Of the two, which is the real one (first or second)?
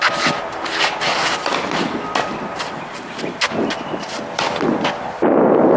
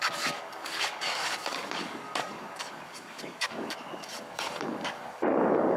first